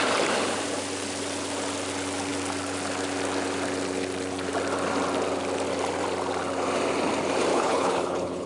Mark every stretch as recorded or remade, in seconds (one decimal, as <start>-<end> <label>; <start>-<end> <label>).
0.0-7.5 recorded; 7.5-8.5 remade